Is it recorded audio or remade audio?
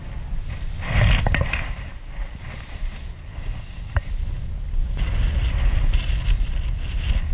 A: recorded